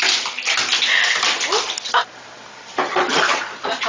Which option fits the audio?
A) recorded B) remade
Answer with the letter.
A